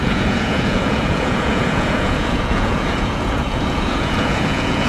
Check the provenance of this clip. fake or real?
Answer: fake